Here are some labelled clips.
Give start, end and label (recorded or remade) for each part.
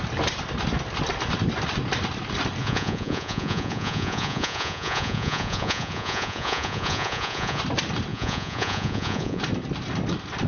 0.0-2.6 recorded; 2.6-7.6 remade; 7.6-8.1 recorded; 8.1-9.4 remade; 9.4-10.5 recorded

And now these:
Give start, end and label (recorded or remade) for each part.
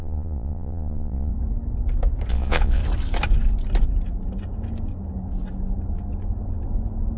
0.0-1.3 remade; 1.3-2.3 recorded; 2.3-2.8 remade; 2.8-7.2 recorded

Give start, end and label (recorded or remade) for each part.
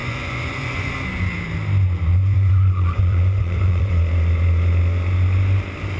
0.0-0.9 remade; 0.9-2.1 recorded; 2.1-3.9 remade; 3.9-6.0 recorded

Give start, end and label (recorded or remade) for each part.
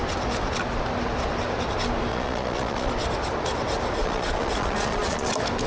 0.0-2.1 recorded; 2.1-2.9 remade; 2.9-4.0 recorded; 4.0-5.3 remade; 5.3-5.7 recorded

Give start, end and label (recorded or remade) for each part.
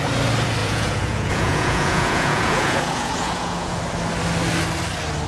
0.0-0.6 recorded; 0.6-3.8 remade; 3.8-5.3 recorded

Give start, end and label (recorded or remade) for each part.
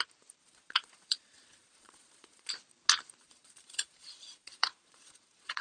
0.0-0.4 recorded; 0.4-2.5 remade; 2.5-3.2 recorded; 3.2-5.6 remade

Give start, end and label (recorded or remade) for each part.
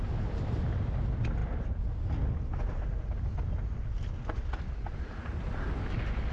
0.0-6.3 recorded